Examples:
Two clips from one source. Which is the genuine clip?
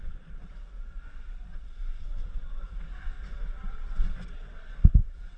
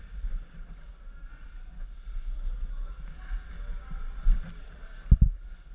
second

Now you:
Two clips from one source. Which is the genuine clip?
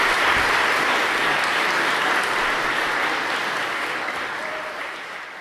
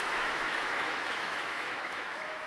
first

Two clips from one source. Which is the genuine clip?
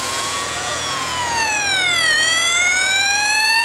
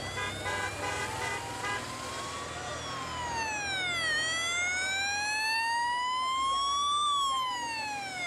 second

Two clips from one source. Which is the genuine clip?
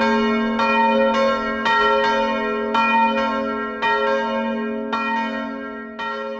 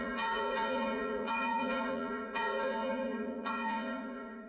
first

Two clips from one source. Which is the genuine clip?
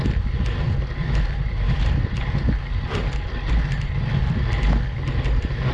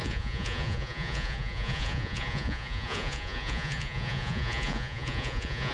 first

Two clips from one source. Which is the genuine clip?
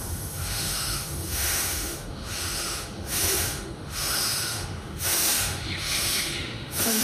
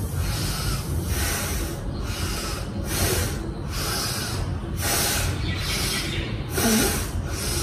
second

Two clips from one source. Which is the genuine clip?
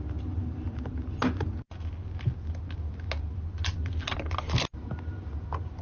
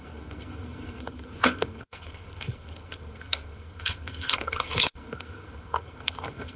first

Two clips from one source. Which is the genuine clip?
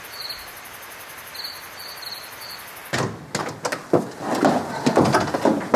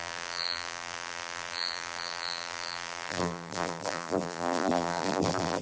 first